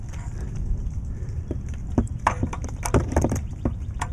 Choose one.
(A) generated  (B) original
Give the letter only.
A